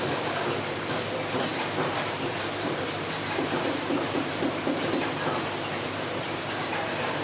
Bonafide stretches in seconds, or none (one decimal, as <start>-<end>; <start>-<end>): none